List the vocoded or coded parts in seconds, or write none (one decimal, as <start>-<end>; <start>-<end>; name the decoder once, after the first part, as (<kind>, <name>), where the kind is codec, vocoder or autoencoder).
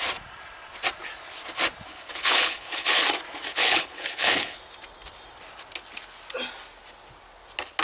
1.9-3.0 (codec, HILCodec); 3.5-4.6